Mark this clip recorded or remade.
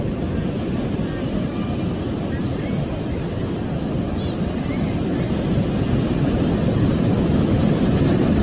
recorded